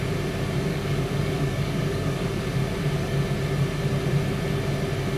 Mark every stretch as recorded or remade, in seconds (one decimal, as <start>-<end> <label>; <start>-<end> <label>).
0.0-0.7 recorded; 0.7-2.4 remade; 2.4-5.2 recorded